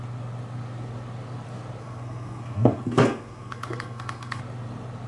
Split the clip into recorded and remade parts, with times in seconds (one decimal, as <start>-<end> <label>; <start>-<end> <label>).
0.0-1.8 recorded; 1.8-4.4 remade; 4.4-5.1 recorded